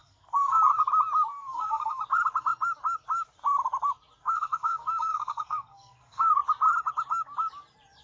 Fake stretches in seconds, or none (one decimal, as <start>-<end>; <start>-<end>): 0.0-0.6; 1.3-2.0; 4.2-6.3